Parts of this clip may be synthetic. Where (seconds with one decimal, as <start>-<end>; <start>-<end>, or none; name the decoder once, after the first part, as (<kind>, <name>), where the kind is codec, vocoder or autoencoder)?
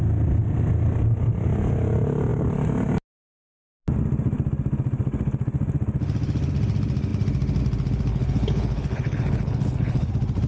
8.1-10.1 (codec, HILCodec)